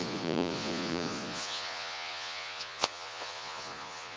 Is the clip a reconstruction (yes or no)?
yes